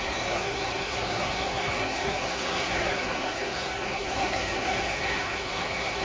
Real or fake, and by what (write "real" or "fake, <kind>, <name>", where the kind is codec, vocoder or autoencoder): fake, codec, SNAC